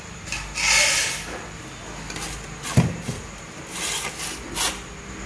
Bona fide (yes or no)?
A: yes